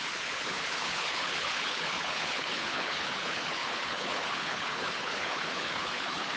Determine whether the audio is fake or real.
fake